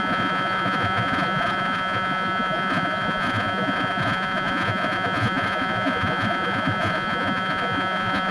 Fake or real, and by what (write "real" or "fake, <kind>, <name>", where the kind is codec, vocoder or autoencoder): fake, vocoder, Vocos